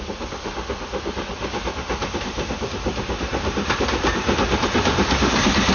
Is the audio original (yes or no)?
yes